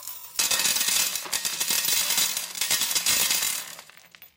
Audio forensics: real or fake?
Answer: real